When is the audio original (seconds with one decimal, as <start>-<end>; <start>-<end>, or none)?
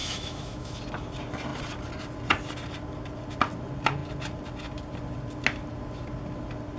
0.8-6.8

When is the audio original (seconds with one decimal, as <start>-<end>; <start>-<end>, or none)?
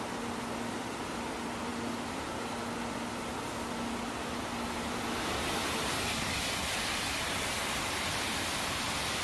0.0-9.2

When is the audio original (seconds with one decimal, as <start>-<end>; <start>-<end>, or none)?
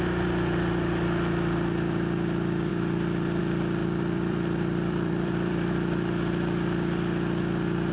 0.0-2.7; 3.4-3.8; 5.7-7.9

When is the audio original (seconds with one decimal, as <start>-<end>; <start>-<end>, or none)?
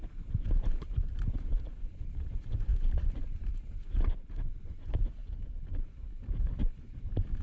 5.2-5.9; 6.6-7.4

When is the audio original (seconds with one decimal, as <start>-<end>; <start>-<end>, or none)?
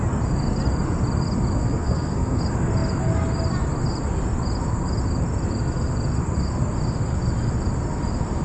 0.0-1.6; 2.4-8.4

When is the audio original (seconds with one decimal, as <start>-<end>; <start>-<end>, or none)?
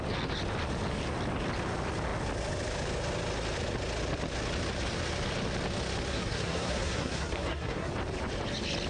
0.0-6.1; 7.9-8.9